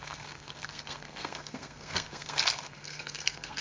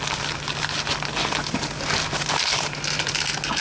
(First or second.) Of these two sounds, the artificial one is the first